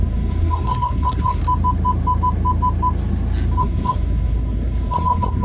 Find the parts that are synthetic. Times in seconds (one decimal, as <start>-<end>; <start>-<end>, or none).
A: 0.0-1.4; 3.6-5.4